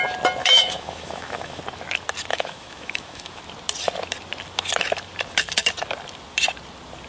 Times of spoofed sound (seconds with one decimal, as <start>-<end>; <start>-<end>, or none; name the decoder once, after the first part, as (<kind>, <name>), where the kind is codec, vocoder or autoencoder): 0.4-1.6 (autoencoder, DAC-VAE); 2.3-3.4

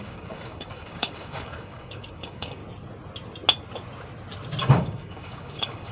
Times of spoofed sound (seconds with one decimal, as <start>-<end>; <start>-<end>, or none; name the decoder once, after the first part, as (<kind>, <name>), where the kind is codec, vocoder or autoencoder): 0.0-2.6 (codec, DAC); 4.6-5.9

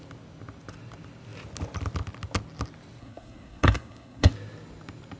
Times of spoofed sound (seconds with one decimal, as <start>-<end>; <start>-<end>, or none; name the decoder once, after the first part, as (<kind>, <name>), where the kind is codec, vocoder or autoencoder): 3.0-4.3 (codec, SNAC)